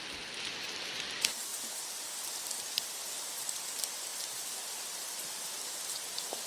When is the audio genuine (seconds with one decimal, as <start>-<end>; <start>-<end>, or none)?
0.0-6.5